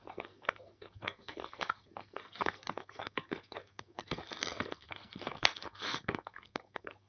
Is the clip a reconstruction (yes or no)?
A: yes